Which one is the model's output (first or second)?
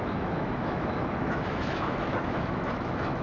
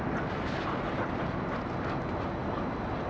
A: first